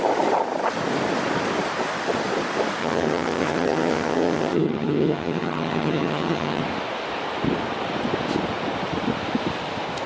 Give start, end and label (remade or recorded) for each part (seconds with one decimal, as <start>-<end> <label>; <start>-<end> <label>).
0.0-2.8 recorded; 2.8-6.6 remade; 6.6-10.1 recorded